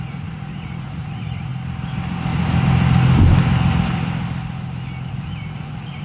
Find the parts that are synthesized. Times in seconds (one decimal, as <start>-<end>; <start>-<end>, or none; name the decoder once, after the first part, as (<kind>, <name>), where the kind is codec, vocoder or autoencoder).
0.0-1.5 (vocoder, Vocos); 5.1-6.0